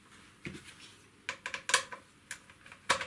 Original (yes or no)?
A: yes